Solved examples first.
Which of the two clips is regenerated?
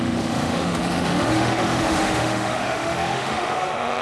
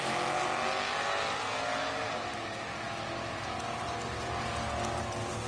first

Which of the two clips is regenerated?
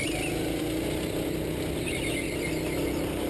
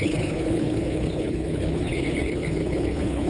second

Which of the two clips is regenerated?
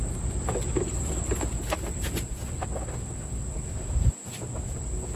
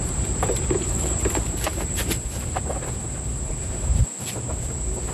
second